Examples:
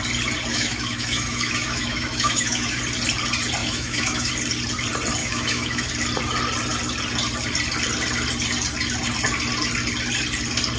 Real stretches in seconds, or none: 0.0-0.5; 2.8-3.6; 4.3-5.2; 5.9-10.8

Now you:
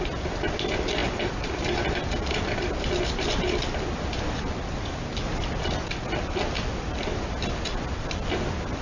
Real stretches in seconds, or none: 0.0-8.8

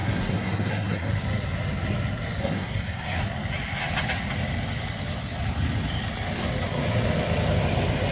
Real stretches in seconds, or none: 1.1-2.4; 3.2-8.1

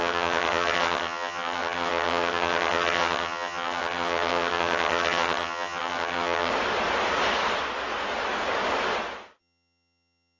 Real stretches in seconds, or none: 6.5-9.4

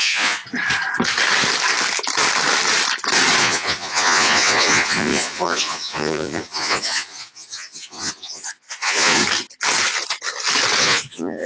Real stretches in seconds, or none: 0.4-3.4; 9.2-10.8